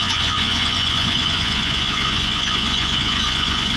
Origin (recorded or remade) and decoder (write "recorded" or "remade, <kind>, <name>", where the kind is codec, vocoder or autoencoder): remade, vocoder, Vocos